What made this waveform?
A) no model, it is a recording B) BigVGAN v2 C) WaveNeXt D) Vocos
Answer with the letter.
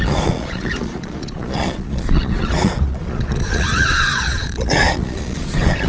D